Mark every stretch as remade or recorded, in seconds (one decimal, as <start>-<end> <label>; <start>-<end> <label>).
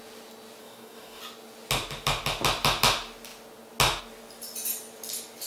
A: 0.0-0.6 recorded; 0.6-1.2 remade; 1.2-5.5 recorded